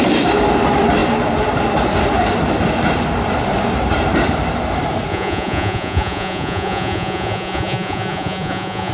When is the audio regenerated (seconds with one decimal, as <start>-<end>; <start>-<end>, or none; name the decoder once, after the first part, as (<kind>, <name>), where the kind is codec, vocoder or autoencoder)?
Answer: 5.1-8.9 (vocoder, Vocos)